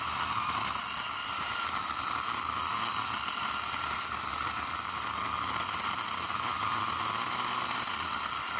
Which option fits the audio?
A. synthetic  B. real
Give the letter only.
B